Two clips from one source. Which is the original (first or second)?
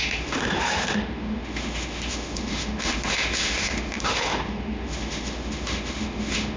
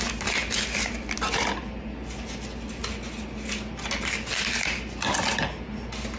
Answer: second